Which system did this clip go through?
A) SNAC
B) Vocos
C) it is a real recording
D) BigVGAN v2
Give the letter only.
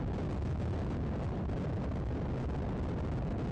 C